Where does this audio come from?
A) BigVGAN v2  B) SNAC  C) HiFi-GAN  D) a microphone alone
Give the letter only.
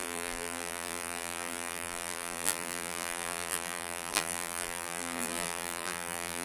A